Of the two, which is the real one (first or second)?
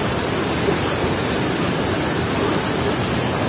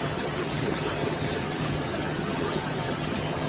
first